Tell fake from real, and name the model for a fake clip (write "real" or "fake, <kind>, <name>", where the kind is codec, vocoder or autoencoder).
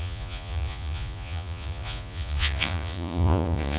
fake, vocoder, Vocos